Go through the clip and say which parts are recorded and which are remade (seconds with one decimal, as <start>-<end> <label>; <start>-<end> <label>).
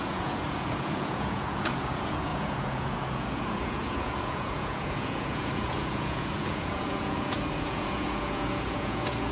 0.0-9.3 remade